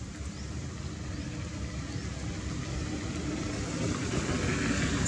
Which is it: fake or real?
real